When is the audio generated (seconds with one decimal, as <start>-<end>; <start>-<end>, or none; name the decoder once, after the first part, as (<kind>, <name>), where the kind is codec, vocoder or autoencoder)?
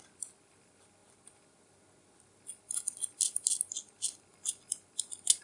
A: none